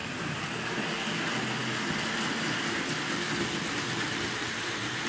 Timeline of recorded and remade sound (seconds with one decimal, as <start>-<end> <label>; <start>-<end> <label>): 0.0-5.1 recorded